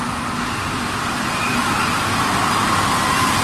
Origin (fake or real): real